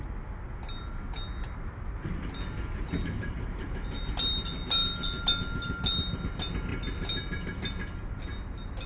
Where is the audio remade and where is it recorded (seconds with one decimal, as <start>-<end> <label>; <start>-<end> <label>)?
0.0-8.9 recorded